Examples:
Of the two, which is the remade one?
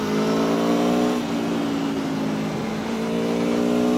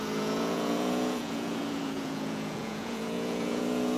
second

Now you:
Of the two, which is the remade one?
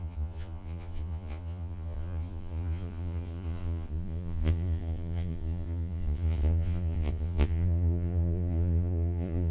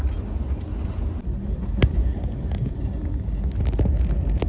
first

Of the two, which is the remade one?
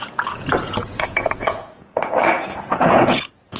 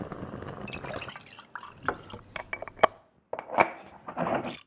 first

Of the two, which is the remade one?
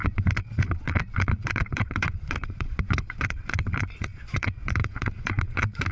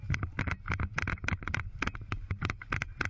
first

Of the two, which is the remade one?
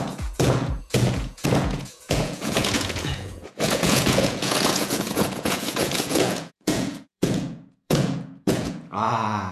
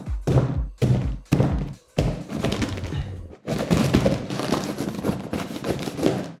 first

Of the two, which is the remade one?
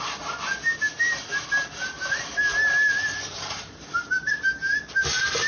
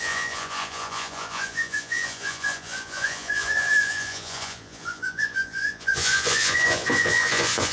second